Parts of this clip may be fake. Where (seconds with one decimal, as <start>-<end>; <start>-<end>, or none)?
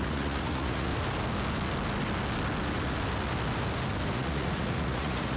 0.0-0.9; 4.1-5.4